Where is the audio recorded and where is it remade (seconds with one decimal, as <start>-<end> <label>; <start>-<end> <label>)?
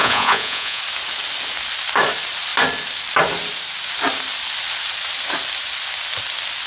0.0-0.8 remade; 0.8-6.7 recorded